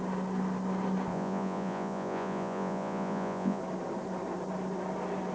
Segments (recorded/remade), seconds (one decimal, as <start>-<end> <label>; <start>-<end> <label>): 0.0-1.1 recorded; 1.1-3.6 remade; 3.6-5.3 recorded